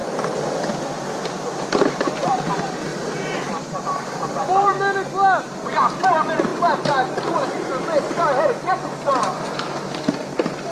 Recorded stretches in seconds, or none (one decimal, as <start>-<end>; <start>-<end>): 0.0-2.9; 4.7-10.7